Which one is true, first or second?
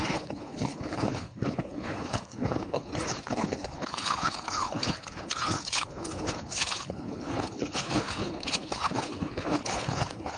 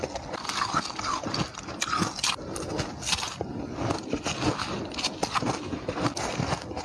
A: second